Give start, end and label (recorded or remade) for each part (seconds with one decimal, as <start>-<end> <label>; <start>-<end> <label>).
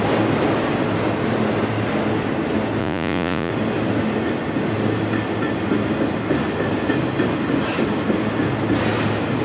0.0-2.8 recorded; 2.8-3.5 remade; 3.5-9.4 recorded